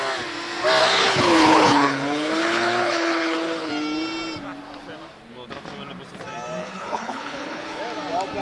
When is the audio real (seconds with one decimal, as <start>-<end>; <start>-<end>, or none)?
0.0-0.8; 3.7-6.6; 7.8-8.4